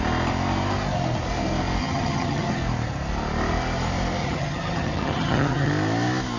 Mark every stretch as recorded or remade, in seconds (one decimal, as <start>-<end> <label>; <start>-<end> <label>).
0.0-1.8 recorded; 1.8-2.6 remade; 2.6-4.2 recorded; 4.2-5.7 remade; 5.7-6.4 recorded